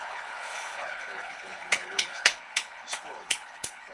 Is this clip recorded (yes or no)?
no